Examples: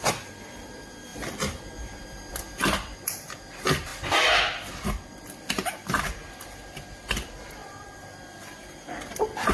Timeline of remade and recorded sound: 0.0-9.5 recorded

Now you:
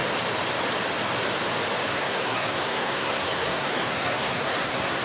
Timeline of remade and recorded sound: 0.0-1.9 recorded; 1.9-5.0 remade

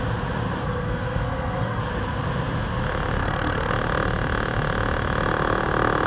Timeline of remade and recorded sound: 0.0-0.6 recorded; 0.6-1.8 remade; 1.8-3.2 recorded; 3.2-3.7 remade; 3.7-6.1 recorded